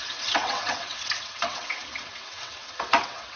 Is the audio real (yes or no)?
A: no